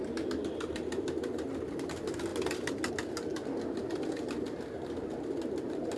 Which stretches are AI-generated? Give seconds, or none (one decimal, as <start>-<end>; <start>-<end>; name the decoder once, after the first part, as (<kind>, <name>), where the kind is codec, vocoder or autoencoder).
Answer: none